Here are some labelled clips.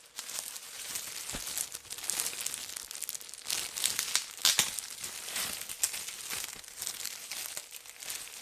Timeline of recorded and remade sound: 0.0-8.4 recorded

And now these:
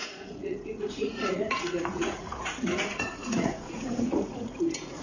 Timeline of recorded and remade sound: 0.0-5.0 remade

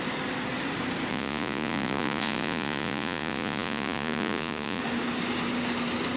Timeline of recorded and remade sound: 0.0-1.1 recorded; 1.1-4.8 remade; 4.8-6.2 recorded

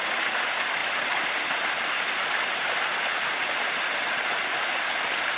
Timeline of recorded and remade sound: 0.0-5.4 recorded